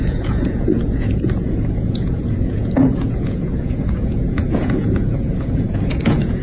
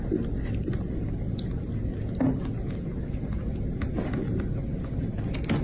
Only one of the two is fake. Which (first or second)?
first